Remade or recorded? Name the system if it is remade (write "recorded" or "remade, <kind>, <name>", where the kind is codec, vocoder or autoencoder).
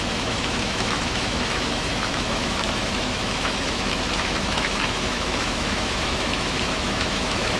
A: remade, autoencoder, DAC-VAE